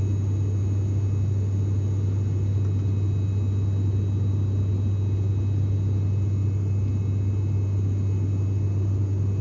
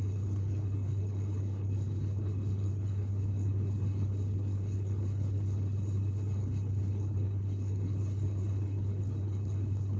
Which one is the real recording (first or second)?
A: first